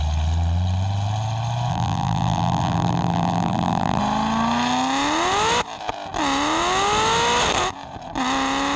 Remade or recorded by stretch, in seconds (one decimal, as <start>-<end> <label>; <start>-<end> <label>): 0.0-1.7 recorded; 1.7-4.0 remade; 4.0-8.8 recorded